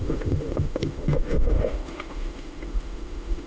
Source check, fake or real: fake